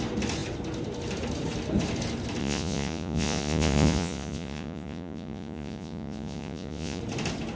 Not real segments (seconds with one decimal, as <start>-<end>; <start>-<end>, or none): 2.4-7.0